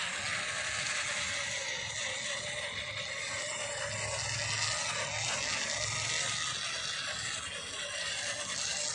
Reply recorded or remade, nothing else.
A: recorded